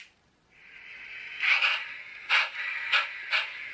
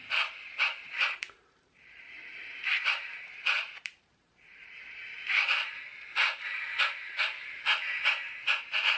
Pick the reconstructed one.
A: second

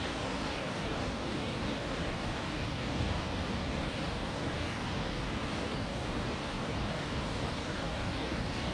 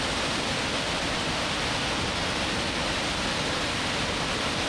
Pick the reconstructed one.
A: first